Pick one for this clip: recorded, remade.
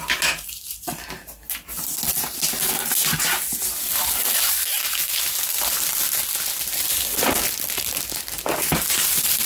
recorded